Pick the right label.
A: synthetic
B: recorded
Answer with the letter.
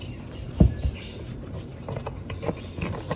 A